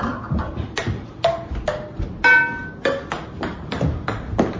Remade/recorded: recorded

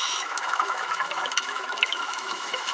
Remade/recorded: remade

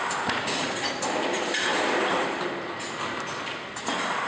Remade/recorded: recorded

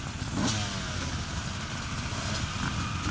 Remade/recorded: recorded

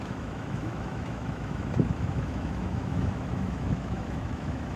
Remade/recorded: remade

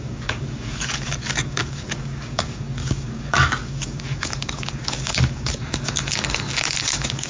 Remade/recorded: remade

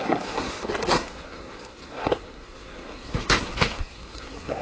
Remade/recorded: remade